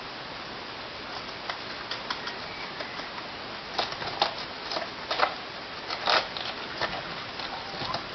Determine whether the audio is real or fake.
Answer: real